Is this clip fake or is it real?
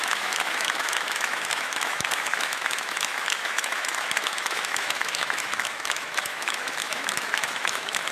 fake